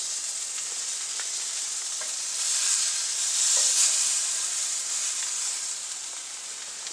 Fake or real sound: fake